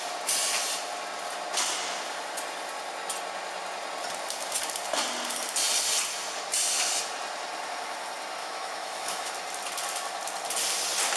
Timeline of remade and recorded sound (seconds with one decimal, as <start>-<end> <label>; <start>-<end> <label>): 0.0-8.4 recorded; 8.4-9.3 remade; 9.3-11.2 recorded